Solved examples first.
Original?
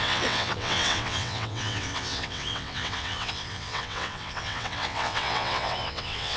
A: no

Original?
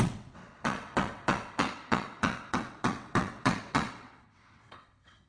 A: no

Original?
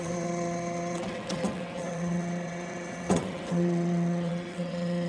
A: no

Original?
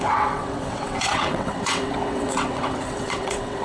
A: no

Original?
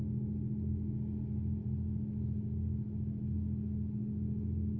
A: yes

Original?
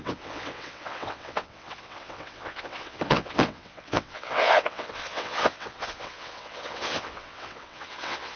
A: no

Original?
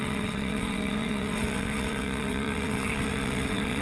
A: no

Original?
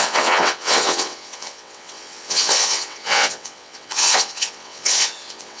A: no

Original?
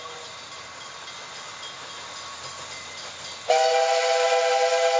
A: yes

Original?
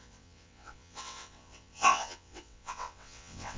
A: no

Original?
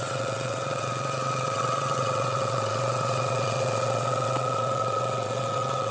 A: no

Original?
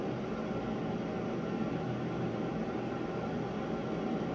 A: yes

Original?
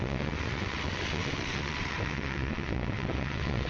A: no